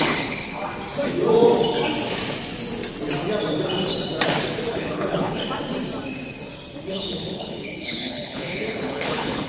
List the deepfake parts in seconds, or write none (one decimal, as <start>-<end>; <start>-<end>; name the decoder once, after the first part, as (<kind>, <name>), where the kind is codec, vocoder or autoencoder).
0.0-0.6 (codec, HILCodec); 4.7-5.4; 6.9-9.5